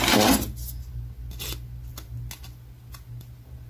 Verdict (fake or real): real